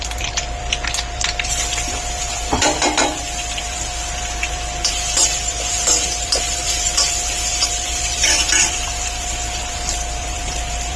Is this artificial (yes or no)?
yes